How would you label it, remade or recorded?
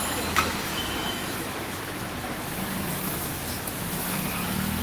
remade